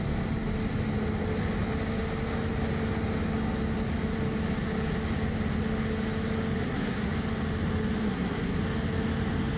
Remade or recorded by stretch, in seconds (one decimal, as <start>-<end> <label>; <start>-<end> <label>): 0.0-6.6 recorded; 6.6-7.1 remade; 7.1-8.0 recorded; 8.0-8.6 remade; 8.6-9.6 recorded